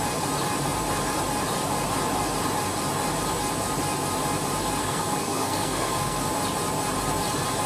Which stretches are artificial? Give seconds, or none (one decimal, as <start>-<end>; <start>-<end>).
4.8-6.2